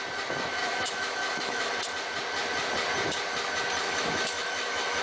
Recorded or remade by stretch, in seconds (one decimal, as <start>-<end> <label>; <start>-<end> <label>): 0.0-0.6 recorded; 0.6-1.8 remade; 1.8-3.8 recorded; 3.8-5.0 remade